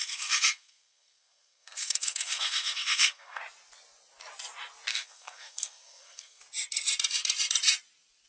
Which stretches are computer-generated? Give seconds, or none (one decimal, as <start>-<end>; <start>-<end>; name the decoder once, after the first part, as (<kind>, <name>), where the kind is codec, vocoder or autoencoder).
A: 0.0-3.4 (codec, SNAC); 4.9-6.4